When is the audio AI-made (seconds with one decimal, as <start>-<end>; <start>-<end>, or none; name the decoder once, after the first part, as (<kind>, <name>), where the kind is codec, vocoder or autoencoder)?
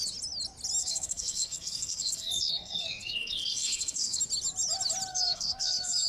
0.8-4.2 (codec, SNAC); 5.1-6.1